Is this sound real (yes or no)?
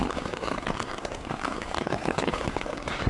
no